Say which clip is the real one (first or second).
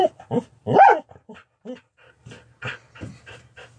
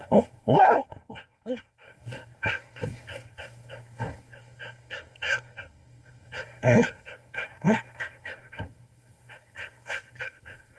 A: first